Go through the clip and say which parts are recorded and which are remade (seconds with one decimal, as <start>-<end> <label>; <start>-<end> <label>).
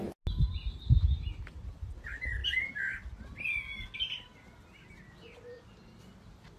0.0-6.6 recorded